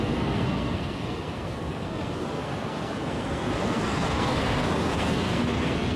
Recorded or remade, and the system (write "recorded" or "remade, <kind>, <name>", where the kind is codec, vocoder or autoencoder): remade, codec, SNAC